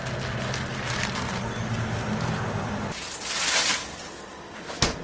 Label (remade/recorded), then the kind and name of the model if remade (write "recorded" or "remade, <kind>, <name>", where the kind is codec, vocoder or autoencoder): recorded